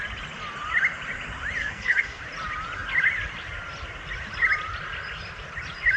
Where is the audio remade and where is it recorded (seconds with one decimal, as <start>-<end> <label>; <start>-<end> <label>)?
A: 0.0-1.6 recorded; 1.6-2.2 remade; 2.2-6.0 recorded